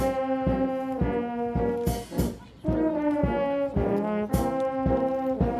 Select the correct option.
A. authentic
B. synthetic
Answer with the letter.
A